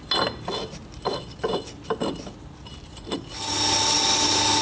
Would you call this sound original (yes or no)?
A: yes